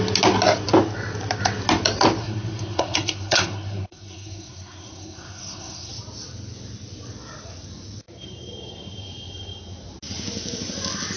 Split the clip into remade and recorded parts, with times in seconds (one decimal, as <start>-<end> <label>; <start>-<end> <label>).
0.0-2.2 recorded; 2.2-5.9 remade; 5.9-11.2 recorded